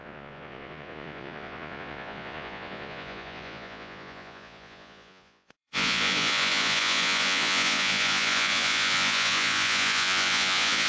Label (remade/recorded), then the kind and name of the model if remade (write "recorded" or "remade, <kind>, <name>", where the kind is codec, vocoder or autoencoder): remade, vocoder, Vocos